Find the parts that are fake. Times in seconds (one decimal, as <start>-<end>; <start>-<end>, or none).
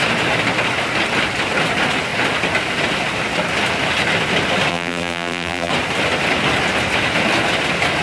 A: 4.7-5.7